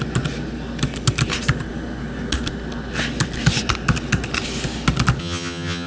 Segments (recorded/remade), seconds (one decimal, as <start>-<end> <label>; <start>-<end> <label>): 0.0-5.2 recorded; 5.2-5.9 remade